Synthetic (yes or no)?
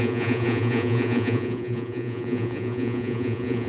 yes